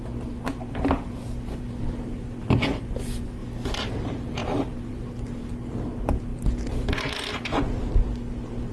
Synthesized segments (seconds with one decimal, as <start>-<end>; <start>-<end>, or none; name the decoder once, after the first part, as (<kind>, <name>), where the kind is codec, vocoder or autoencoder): 4.4-5.0 (vocoder, BigVGAN v2)